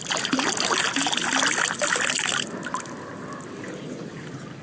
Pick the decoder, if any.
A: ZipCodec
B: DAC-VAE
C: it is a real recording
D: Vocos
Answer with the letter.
C